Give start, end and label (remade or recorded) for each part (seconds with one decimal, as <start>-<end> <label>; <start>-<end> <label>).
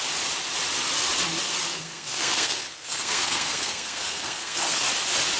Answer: 0.0-1.7 recorded; 1.7-4.9 remade; 4.9-5.4 recorded